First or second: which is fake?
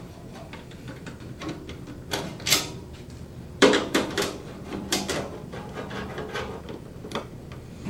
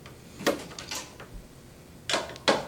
first